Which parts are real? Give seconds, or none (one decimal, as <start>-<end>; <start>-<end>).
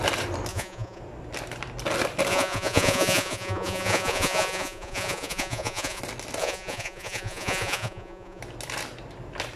0.0-0.5; 1.0-2.3; 6.0-6.4; 8.4-9.6